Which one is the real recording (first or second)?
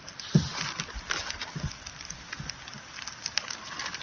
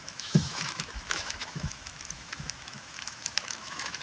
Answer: first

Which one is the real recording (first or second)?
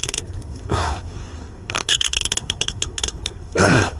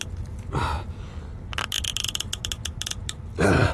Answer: second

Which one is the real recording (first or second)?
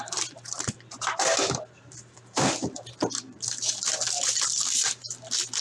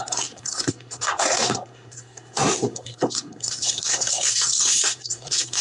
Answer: first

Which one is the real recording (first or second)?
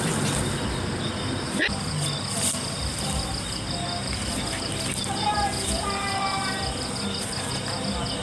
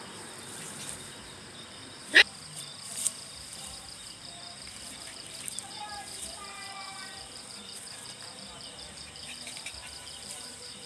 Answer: first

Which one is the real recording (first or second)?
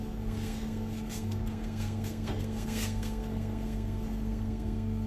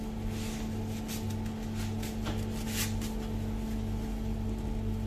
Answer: second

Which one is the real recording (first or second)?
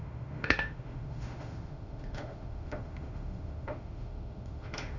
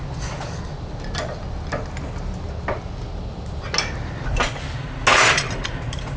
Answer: second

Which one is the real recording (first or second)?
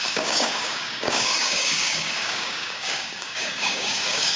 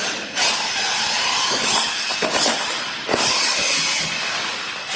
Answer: second